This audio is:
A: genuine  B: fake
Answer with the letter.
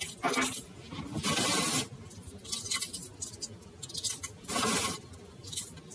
A